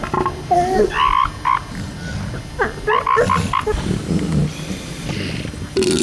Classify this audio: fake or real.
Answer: real